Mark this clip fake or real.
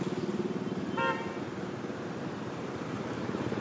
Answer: real